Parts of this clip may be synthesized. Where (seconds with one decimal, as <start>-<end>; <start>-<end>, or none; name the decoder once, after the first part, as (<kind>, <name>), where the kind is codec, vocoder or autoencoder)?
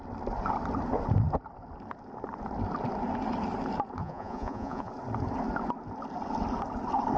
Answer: 4.0-4.9 (vocoder, Vocos)